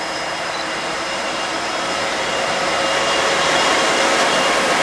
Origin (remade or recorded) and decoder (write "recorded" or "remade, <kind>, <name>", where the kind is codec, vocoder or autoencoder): remade, vocoder, BigVGAN v2